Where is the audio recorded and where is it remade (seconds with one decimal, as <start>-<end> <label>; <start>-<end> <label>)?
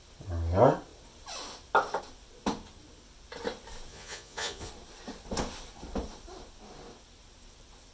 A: 0.0-3.9 recorded; 3.9-4.7 remade; 4.7-7.9 recorded